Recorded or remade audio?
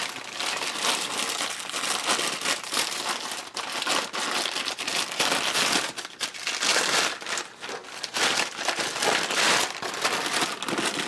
recorded